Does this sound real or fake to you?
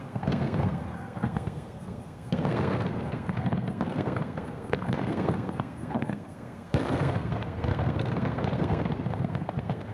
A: fake